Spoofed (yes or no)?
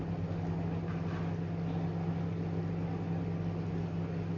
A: no